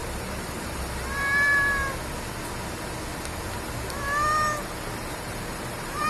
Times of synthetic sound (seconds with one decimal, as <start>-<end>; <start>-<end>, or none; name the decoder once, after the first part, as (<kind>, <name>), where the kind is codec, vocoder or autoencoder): 0.0-0.8 (vocoder, BigVGAN v2); 5.0-6.1